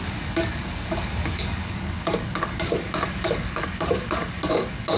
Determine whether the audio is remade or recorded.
remade